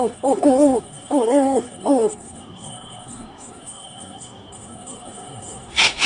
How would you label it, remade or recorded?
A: remade